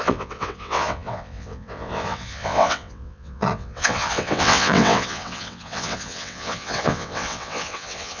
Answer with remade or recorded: remade